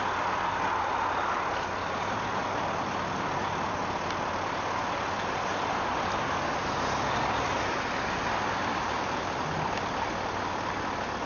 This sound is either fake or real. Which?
real